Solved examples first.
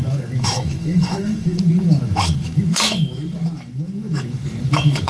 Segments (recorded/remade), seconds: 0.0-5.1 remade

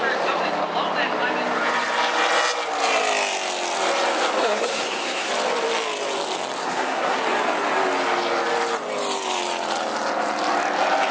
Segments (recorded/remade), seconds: 0.0-4.4 recorded; 4.4-5.3 remade; 5.3-6.6 recorded; 6.6-7.2 remade; 7.2-11.1 recorded

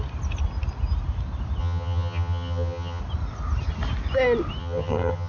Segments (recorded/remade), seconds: 0.0-1.6 recorded; 1.6-3.0 remade; 3.0-4.6 recorded; 4.6-5.3 remade

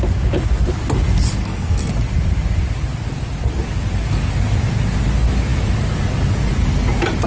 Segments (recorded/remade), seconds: 0.0-1.4 recorded; 1.4-1.9 remade; 1.9-7.3 recorded

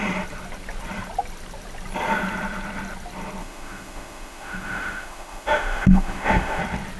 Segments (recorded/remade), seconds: 0.0-3.4 recorded; 3.4-6.6 remade; 6.6-7.0 recorded

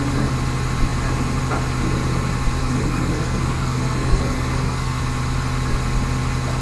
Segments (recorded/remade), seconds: 0.0-2.6 recorded; 2.6-5.0 remade; 5.0-6.6 recorded